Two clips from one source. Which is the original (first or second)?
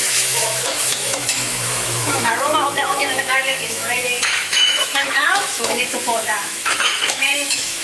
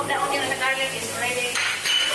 second